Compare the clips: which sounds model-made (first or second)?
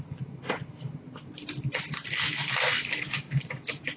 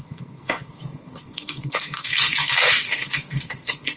second